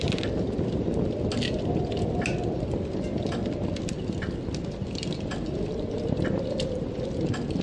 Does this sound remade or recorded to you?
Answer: recorded